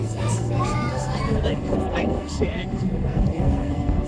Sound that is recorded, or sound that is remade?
remade